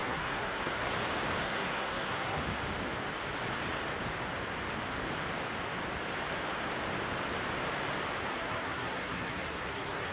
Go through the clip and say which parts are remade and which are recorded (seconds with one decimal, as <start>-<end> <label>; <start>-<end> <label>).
0.0-0.9 remade; 0.9-1.4 recorded; 1.4-2.4 remade; 2.4-8.3 recorded; 8.3-10.1 remade